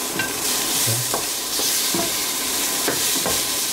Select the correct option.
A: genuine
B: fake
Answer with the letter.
B